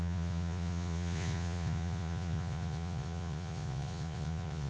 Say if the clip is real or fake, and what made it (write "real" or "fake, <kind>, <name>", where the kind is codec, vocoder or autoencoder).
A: fake, vocoder, Vocos